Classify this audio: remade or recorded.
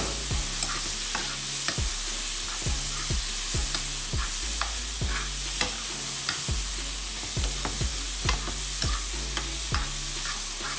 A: recorded